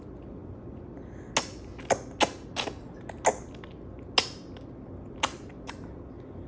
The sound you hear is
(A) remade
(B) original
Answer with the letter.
B